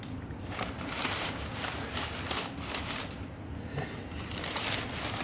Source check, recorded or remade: recorded